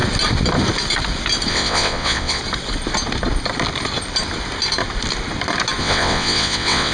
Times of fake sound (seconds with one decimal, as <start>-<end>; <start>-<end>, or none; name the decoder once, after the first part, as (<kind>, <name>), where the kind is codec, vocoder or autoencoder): 1.5-2.4 (vocoder, WaveNeXt); 5.8-6.9